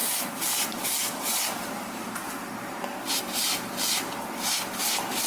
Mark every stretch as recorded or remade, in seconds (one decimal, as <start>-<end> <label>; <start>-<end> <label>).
0.0-3.2 remade; 3.2-5.3 recorded